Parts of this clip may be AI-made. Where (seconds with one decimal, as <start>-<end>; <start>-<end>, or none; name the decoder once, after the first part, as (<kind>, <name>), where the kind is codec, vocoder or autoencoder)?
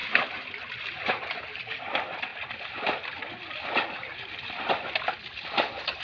none